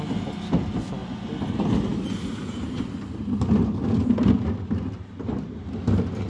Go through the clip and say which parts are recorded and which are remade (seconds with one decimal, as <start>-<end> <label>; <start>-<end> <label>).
0.0-6.3 recorded